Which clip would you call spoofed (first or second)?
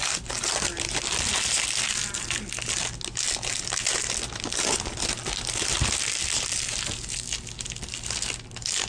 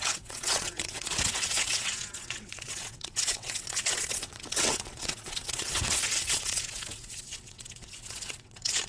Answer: second